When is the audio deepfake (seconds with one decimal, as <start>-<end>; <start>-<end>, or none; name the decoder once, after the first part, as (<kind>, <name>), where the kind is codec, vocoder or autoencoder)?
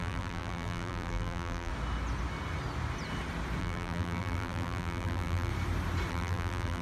0.0-1.7 (vocoder, BigVGAN v2); 3.6-5.5; 6.1-6.8